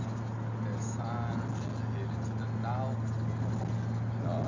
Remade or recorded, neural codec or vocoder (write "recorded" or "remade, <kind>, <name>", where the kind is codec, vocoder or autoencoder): recorded